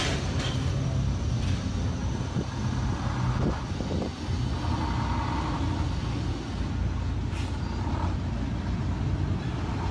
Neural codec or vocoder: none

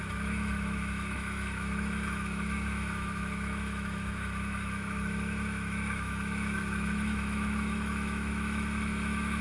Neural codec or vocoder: autoencoder, DAC-VAE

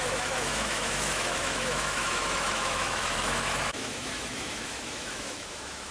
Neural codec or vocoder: autoencoder, DAC-VAE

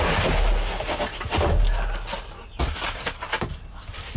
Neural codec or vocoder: none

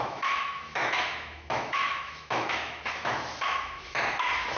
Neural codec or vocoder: autoencoder, DAC-VAE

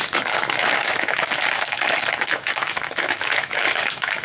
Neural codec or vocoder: autoencoder, DAC-VAE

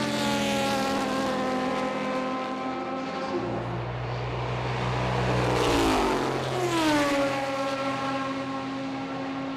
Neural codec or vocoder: none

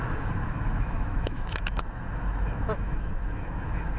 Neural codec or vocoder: autoencoder, DAC-VAE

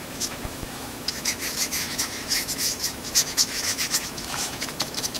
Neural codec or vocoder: autoencoder, DAC-VAE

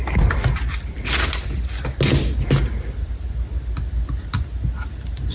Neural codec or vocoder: none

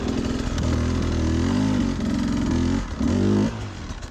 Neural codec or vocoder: none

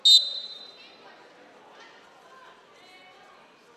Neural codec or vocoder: none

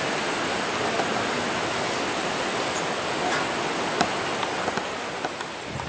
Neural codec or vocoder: none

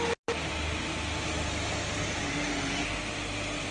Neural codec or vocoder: none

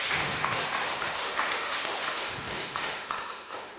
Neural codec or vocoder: autoencoder, DAC-VAE